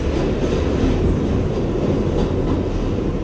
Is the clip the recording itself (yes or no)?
yes